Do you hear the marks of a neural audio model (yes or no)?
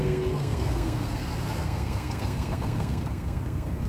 yes